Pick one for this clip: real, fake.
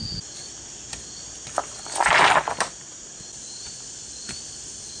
real